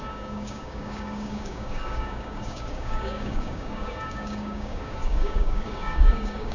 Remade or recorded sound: remade